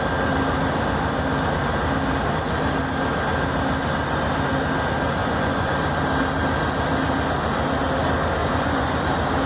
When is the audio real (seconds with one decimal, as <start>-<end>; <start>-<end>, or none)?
0.0-5.2; 5.7-8.4; 9.0-9.5